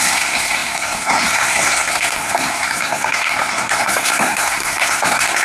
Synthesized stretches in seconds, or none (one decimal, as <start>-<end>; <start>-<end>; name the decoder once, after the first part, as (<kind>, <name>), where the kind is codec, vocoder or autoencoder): 0.0-5.4 (codec, SNAC)